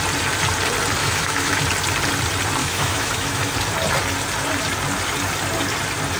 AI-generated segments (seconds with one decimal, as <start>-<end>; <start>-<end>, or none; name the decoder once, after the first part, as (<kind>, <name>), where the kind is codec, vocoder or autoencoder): 1.0-1.6 (autoencoder, DAC-VAE); 2.6-3.5